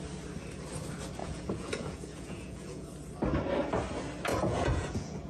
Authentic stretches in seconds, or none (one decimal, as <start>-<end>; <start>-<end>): 0.0-1.2; 2.9-4.3